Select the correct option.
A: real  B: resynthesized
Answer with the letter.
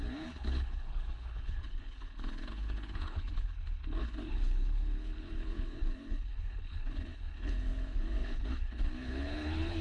B